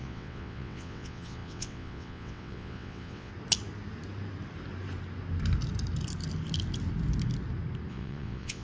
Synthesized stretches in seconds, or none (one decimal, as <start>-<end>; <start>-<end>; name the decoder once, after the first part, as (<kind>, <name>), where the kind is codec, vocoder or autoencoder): 0.0-3.3 (vocoder, WaveNeXt); 7.9-8.6